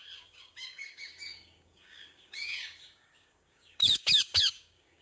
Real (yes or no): no